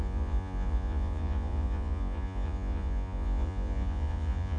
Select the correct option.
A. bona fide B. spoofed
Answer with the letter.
B